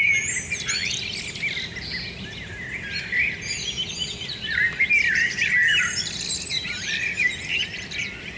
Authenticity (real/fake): real